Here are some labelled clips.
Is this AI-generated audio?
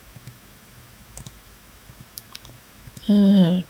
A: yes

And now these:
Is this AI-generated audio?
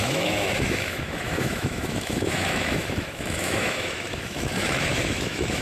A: yes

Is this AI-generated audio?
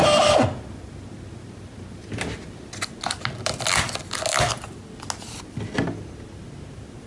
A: no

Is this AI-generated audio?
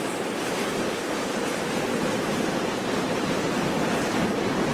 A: yes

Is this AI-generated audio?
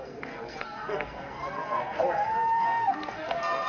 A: yes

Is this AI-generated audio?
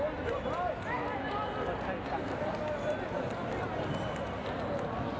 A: no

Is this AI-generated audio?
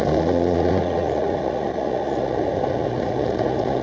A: yes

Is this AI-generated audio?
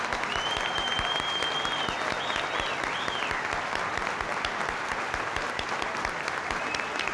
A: no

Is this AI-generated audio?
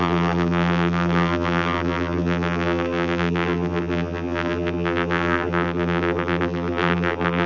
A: yes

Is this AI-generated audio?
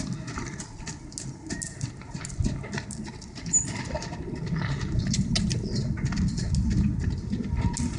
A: no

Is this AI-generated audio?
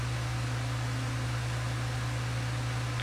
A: no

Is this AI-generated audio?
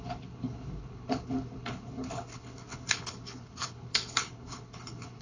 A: yes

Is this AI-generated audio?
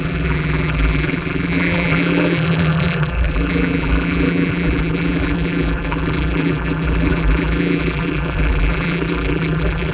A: yes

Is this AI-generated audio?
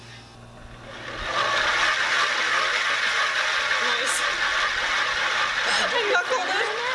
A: no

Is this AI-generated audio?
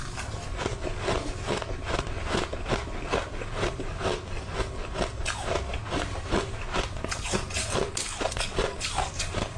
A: no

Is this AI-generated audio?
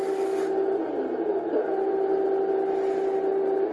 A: no